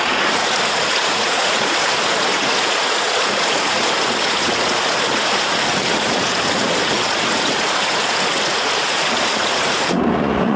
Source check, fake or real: fake